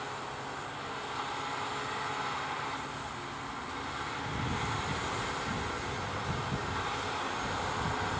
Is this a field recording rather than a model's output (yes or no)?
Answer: yes